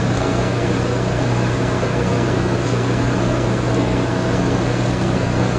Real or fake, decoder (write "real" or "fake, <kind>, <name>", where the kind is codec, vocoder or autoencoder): fake, codec, SNAC